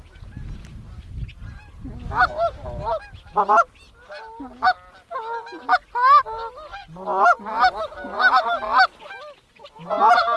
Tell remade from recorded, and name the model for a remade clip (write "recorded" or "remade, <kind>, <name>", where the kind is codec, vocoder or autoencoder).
recorded